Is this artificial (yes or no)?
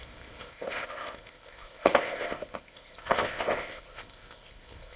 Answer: yes